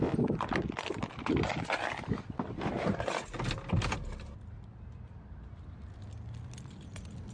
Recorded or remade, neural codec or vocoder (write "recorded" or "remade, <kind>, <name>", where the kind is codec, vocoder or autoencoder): recorded